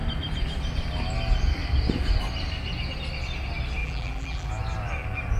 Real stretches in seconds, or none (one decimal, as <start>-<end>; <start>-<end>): 0.0-3.8; 4.5-5.4